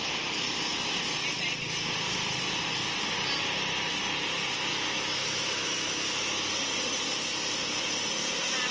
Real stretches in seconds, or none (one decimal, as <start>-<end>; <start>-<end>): 0.0-4.7; 6.5-8.7